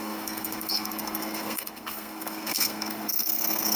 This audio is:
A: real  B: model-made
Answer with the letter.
B